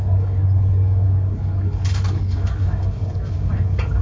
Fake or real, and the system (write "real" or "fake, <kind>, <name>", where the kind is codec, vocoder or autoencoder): fake, codec, DAC